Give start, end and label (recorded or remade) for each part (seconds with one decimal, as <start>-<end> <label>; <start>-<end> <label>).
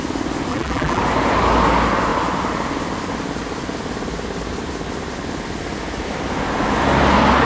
0.0-0.5 recorded; 0.5-1.0 remade; 1.0-7.4 recorded